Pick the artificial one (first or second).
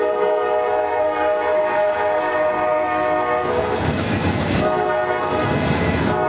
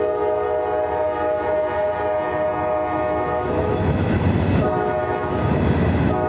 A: first